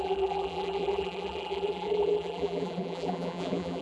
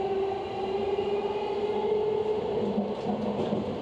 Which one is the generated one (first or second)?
first